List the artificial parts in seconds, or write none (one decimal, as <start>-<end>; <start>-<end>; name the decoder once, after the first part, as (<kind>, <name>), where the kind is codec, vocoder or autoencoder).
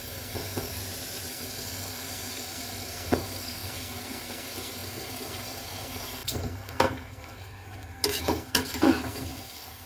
0.0-0.8 (codec, SNAC); 1.3-9.9